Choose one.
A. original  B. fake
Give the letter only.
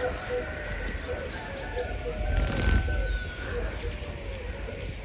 A